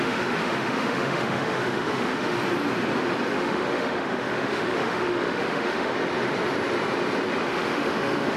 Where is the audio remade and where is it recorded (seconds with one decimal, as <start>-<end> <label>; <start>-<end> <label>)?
0.0-2.4 remade; 2.4-3.3 recorded; 3.3-5.9 remade; 5.9-7.5 recorded; 7.5-8.4 remade